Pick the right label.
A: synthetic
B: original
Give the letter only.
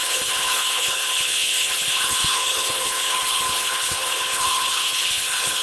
A